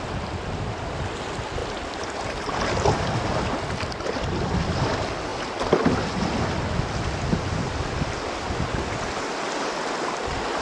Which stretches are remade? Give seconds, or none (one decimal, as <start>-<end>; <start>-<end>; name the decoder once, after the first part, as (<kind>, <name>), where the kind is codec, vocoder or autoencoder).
none